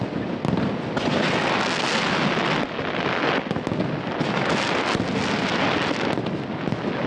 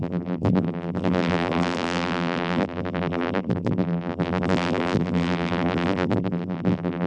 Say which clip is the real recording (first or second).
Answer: first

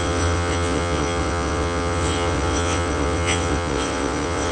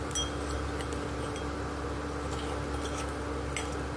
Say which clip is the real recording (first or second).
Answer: second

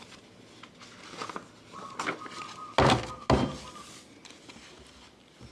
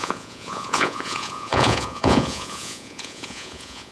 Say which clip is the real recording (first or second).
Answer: first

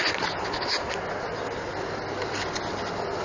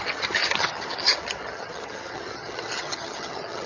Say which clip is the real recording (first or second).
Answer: first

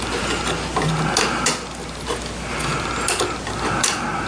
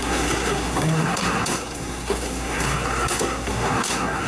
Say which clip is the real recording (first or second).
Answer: first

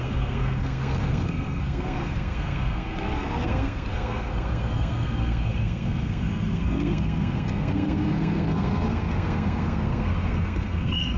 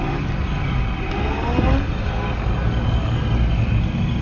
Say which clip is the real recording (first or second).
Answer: second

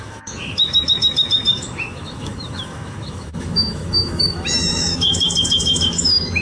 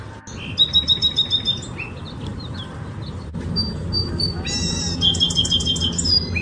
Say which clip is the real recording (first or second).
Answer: second